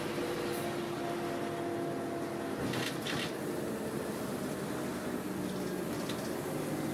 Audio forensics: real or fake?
real